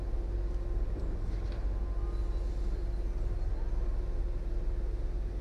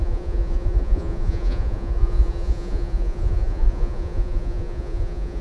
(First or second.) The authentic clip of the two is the first